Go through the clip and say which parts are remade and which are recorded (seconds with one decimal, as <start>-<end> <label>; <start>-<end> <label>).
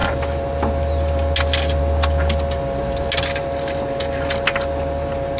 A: 0.0-5.4 recorded